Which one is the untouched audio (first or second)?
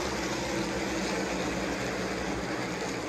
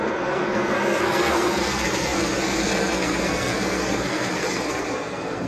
first